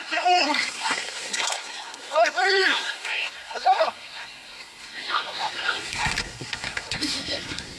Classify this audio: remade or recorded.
remade